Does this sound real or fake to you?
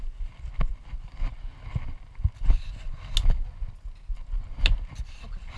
real